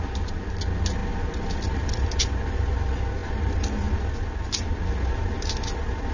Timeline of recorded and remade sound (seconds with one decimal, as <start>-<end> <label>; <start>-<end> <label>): 0.0-6.1 recorded